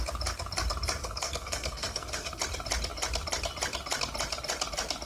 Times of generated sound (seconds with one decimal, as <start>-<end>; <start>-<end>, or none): 1.0-2.4